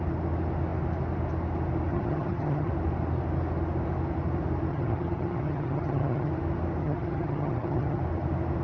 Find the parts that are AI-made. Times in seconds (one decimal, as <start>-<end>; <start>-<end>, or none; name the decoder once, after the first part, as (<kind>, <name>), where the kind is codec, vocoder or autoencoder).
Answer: 1.9-2.7 (vocoder, HiFi-GAN); 4.7-6.3; 6.8-8.0